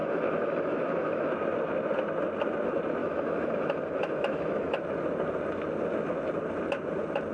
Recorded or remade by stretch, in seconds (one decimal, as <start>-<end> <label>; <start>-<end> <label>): 0.0-1.3 remade; 1.3-3.0 recorded; 3.0-4.8 remade; 4.8-7.3 recorded